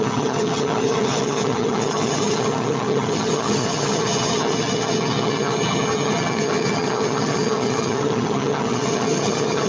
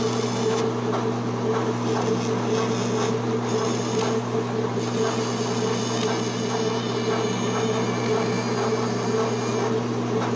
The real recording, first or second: second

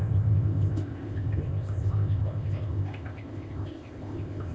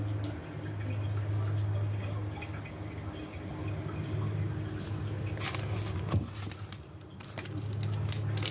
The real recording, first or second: second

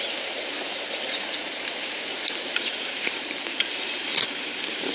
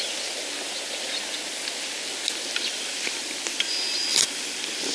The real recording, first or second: second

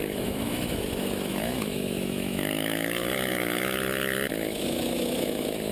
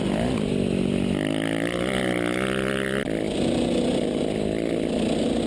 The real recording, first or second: second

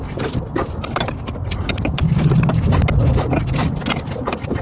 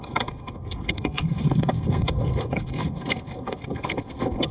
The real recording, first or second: first